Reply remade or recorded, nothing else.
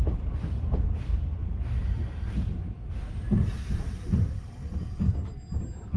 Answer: recorded